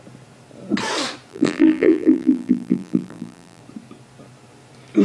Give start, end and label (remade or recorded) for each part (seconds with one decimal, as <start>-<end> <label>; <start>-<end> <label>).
0.0-1.3 recorded; 1.3-3.6 remade; 3.6-5.0 recorded